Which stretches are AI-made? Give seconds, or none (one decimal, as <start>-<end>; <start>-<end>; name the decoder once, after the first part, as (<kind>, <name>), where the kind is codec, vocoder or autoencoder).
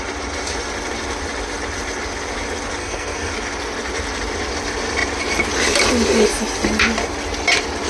2.8-3.3 (codec, SNAC)